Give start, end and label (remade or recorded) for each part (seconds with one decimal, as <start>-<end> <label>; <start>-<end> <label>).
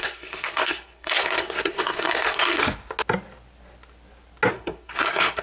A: 0.0-2.6 remade; 2.6-4.5 recorded; 4.5-5.4 remade